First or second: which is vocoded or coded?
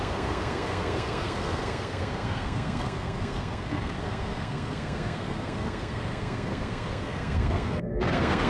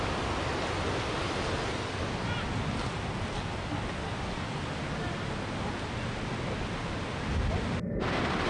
first